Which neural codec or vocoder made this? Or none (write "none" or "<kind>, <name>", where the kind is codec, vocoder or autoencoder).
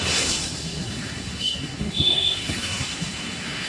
codec, SNAC